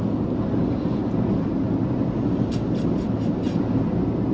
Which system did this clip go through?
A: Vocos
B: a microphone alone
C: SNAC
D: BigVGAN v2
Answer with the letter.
B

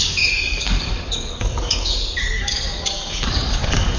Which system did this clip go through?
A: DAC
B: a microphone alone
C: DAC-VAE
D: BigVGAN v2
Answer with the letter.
A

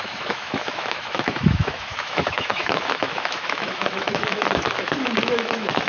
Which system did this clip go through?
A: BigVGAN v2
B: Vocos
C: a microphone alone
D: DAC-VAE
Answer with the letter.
D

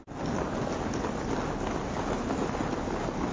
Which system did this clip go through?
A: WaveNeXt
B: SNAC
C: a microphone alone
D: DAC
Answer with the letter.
C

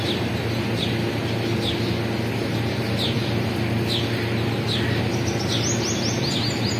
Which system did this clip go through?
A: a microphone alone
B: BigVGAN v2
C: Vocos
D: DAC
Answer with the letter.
A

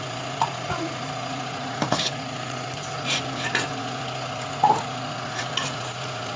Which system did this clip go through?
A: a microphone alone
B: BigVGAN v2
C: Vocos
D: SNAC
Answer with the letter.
C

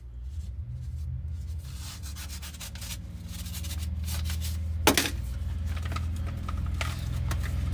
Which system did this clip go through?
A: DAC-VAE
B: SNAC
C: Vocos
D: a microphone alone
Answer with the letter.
D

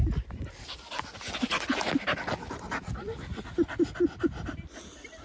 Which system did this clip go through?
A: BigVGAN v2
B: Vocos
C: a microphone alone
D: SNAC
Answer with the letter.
C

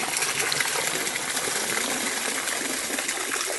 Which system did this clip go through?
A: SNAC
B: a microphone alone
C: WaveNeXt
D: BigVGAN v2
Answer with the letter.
B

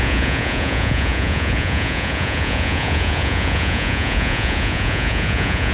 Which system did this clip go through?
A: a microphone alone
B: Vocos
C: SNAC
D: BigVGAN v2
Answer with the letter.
B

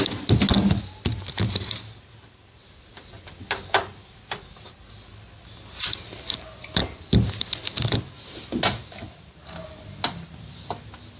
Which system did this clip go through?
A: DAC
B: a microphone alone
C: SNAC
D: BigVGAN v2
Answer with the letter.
B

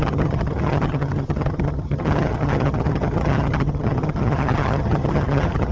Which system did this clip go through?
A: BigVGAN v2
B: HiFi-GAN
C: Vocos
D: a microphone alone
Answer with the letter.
B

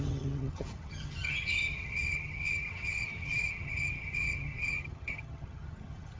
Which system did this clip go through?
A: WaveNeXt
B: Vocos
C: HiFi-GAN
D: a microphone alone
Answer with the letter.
C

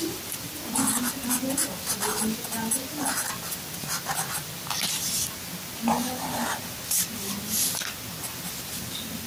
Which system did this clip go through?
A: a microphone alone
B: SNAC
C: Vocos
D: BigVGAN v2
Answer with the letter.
A